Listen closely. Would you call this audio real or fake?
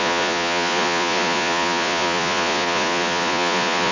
fake